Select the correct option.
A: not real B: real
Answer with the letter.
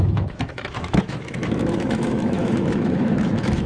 A